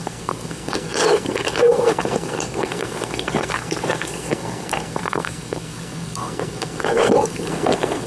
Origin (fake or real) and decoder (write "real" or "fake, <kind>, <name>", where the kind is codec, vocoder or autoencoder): fake, codec, SNAC